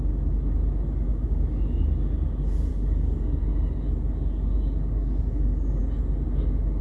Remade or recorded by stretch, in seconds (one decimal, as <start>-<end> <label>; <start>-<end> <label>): 0.0-1.1 recorded; 1.1-1.8 remade; 1.8-2.7 recorded; 2.7-3.4 remade; 3.4-5.0 recorded; 5.0-5.8 remade; 5.8-6.8 recorded